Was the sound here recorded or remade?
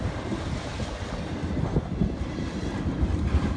recorded